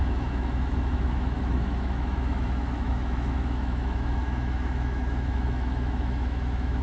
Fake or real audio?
fake